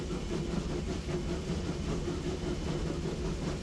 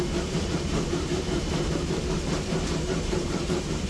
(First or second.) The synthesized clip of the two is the second